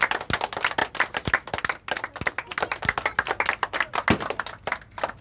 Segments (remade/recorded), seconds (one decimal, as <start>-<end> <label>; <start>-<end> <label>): 0.0-5.2 recorded